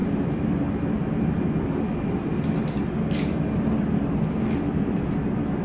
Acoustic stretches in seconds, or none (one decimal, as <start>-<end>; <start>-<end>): 0.0-5.6